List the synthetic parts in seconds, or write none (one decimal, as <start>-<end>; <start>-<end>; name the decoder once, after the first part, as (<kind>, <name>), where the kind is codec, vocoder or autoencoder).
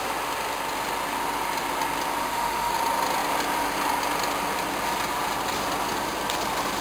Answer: 2.2-2.7 (autoencoder, DAC-VAE)